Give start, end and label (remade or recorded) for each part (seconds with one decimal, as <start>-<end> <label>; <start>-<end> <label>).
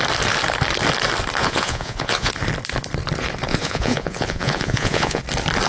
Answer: 0.0-1.4 recorded; 1.4-2.3 remade; 2.3-3.5 recorded; 3.5-5.2 remade; 5.2-5.7 recorded